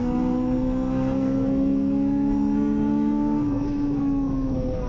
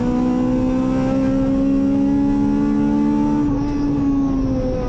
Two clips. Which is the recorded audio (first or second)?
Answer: second